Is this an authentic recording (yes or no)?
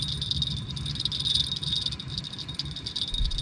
yes